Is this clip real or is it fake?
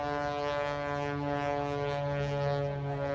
real